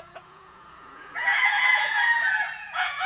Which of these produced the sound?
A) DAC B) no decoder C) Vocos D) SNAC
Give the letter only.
C